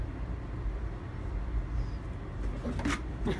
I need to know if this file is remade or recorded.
recorded